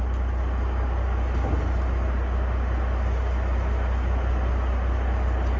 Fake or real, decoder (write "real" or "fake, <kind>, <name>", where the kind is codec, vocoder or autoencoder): real